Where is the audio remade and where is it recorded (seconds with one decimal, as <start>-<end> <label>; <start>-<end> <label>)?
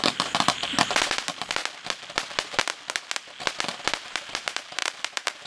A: 0.0-1.6 remade; 1.6-3.9 recorded; 3.9-5.5 remade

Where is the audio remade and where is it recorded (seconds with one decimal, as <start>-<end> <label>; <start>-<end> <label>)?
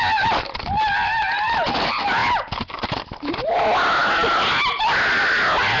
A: 0.0-5.8 recorded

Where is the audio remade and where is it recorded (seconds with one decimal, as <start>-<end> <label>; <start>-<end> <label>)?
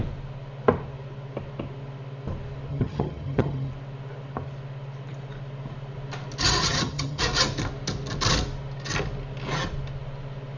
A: 0.0-2.7 recorded; 2.7-3.7 remade; 3.7-6.6 recorded; 6.6-7.2 remade; 7.2-10.6 recorded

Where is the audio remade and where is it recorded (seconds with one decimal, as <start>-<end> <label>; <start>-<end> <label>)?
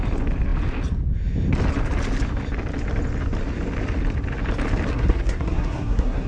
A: 0.0-4.9 recorded; 4.9-6.3 remade